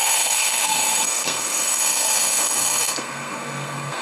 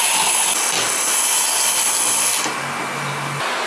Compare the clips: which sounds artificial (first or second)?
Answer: first